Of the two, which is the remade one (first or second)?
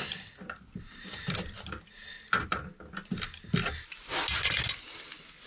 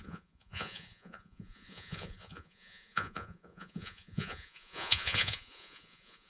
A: second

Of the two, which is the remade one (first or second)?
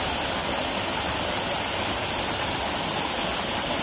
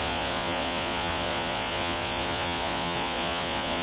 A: second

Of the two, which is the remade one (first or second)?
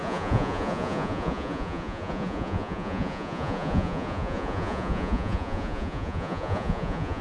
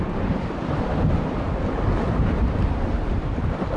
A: first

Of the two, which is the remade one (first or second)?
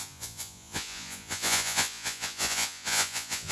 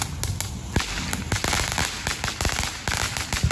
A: first